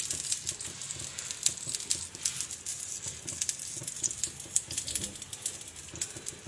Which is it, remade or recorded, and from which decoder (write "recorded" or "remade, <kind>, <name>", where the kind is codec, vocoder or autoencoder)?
recorded